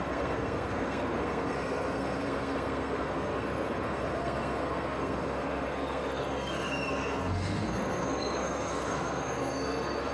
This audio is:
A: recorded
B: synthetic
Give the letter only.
B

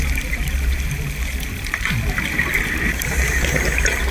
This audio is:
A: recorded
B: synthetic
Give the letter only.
B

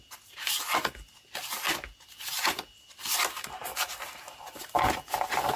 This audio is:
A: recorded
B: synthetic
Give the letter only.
A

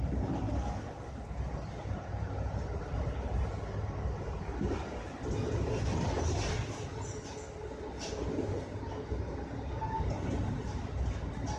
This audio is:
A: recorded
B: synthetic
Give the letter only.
A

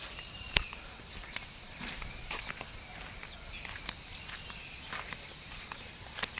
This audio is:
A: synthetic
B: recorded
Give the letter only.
A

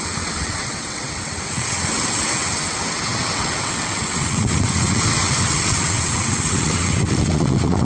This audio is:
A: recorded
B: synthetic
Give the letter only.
B